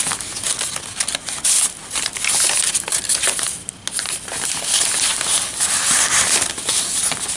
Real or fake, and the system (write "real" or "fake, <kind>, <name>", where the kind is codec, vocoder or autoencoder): real